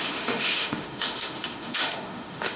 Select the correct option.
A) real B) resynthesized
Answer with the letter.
B